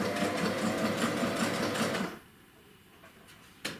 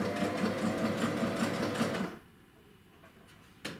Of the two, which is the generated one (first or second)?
first